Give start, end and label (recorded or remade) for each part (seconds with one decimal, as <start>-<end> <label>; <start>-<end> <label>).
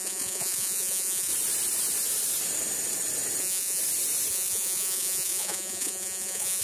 0.0-1.3 remade; 1.3-3.4 recorded; 3.4-3.8 remade; 3.8-4.3 recorded; 4.3-6.6 remade